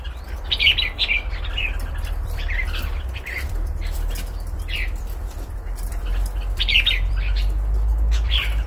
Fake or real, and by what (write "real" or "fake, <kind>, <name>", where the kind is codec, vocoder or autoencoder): fake, vocoder, BigVGAN v2